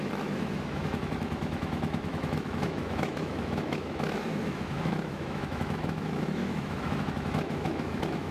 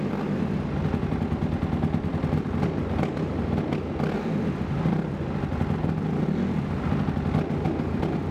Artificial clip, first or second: first